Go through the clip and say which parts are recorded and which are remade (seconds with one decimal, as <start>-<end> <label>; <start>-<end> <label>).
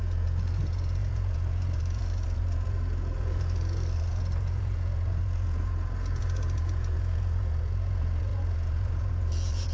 0.0-9.7 remade